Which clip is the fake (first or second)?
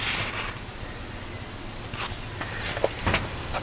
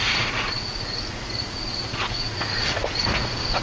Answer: second